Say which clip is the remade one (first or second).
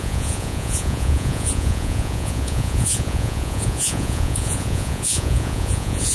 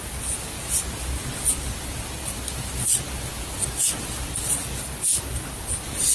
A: first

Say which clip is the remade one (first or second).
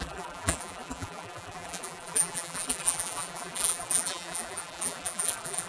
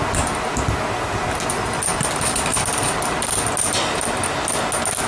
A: first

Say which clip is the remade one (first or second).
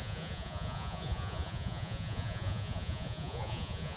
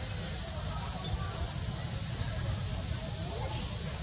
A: first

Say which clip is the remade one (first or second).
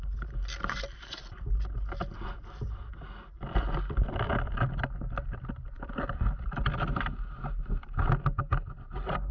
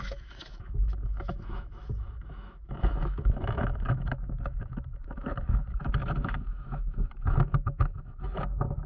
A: second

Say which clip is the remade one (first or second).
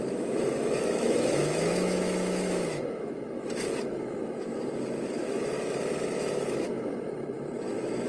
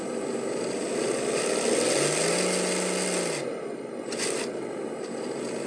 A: first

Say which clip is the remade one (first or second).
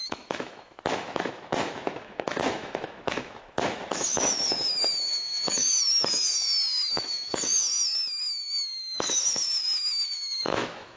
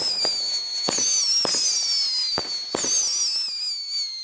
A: first